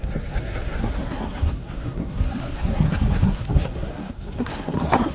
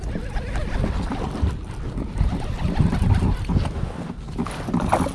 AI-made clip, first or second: first